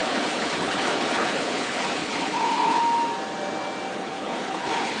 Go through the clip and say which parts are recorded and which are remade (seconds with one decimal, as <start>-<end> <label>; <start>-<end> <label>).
0.0-2.8 remade; 2.8-3.9 recorded; 3.9-5.0 remade